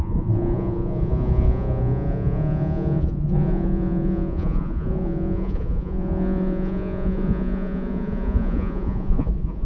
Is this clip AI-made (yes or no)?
yes